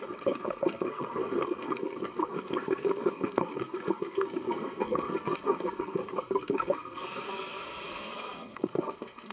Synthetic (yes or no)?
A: yes